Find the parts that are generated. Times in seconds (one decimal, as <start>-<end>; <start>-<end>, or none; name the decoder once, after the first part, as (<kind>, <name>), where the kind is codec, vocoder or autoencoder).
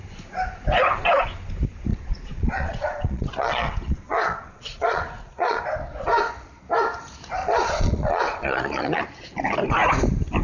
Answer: 1.9-5.6 (vocoder, Vocos); 7.4-9.0